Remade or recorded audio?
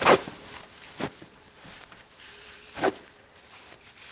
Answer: remade